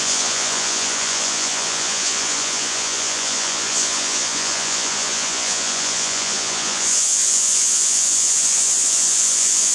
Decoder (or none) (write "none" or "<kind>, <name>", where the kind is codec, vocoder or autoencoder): vocoder, Vocos